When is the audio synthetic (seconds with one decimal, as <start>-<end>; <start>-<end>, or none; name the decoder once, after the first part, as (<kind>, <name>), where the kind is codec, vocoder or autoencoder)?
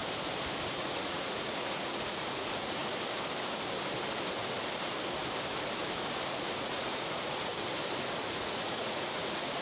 0.7-2.8 (vocoder, Vocos); 6.6-7.5; 8.2-9.6